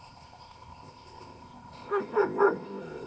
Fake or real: fake